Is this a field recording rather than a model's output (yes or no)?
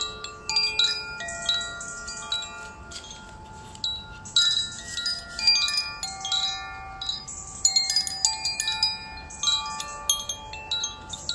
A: yes